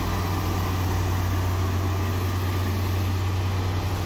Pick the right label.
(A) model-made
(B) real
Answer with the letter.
B